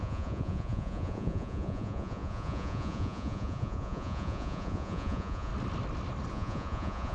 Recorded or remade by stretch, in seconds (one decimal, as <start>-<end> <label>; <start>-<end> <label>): 0.0-5.5 remade; 5.5-6.3 recorded; 6.3-7.1 remade